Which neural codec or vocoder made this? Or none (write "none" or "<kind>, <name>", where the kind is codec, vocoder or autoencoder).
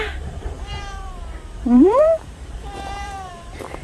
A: vocoder, BigVGAN v2